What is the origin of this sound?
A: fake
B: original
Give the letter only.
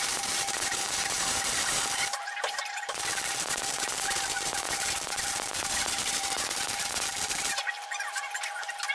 A